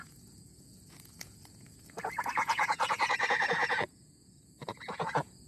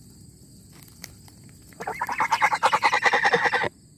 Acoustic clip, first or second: second